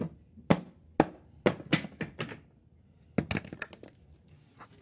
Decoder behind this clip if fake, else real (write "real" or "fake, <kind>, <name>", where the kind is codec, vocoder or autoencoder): real